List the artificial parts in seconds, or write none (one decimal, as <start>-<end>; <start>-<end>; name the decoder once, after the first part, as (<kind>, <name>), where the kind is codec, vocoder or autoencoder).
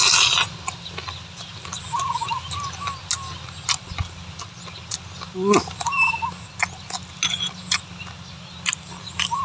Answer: none